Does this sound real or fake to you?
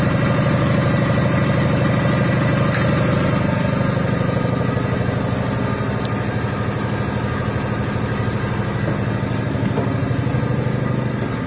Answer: real